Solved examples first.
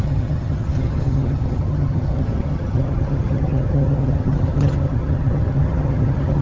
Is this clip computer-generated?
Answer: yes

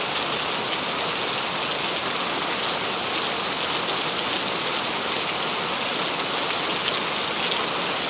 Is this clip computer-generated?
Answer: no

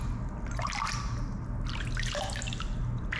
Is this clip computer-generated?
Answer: no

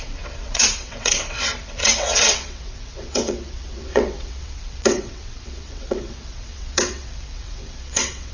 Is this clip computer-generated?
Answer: yes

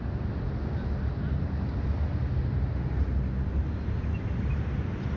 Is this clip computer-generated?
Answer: no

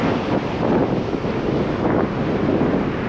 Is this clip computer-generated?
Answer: no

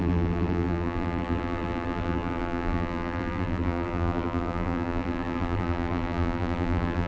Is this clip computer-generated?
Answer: yes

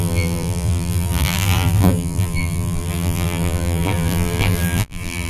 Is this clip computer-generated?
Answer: yes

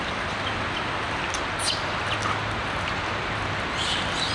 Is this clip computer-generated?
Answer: no